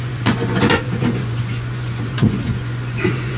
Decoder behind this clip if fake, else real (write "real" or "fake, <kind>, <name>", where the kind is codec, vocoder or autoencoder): fake, vocoder, Vocos